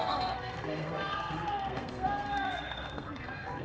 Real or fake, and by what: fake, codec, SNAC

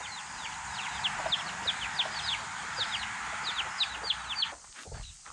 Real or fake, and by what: real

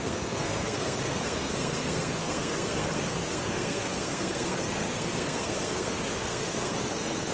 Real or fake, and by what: fake, codec, SNAC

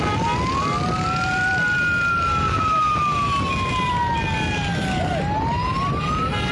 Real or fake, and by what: real